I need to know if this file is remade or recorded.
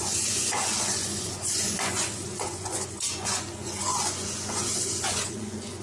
remade